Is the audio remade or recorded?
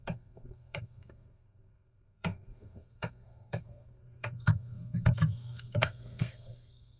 remade